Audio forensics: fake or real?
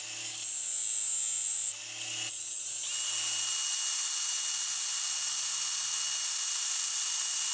real